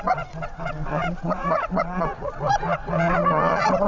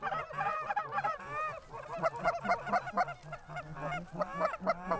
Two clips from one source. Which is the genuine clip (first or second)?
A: second